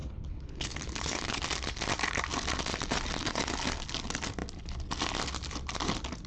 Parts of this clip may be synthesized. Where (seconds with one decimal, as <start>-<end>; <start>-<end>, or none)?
0.0-1.4